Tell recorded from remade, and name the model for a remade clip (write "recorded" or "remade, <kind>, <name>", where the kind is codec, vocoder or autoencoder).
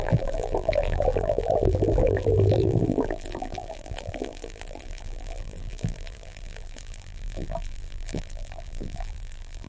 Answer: remade, vocoder, BigVGAN v2